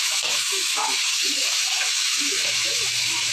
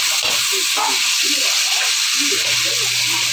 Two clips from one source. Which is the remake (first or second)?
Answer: first